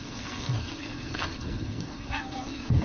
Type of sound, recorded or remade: remade